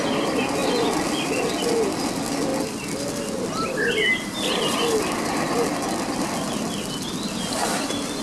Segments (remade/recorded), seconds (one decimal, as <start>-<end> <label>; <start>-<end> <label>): 0.0-8.2 recorded